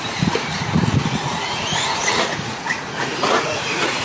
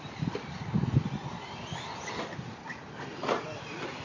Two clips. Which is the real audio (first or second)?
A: second